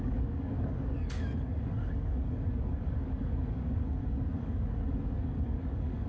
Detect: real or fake fake